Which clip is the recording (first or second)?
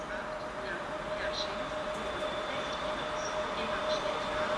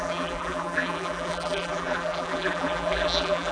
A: first